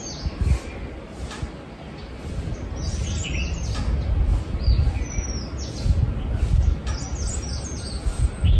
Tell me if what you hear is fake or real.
real